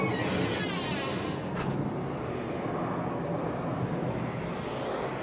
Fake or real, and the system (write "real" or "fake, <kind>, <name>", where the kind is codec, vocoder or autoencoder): real